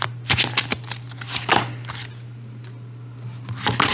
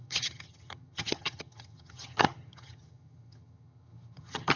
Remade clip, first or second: second